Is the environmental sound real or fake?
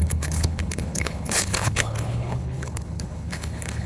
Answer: fake